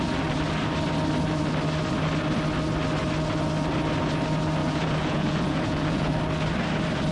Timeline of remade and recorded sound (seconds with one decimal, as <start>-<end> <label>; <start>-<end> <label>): 0.0-4.6 recorded; 4.6-6.1 remade; 6.1-7.1 recorded